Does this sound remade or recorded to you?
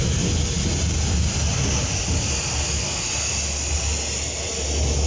recorded